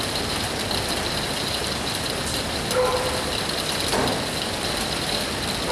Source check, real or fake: real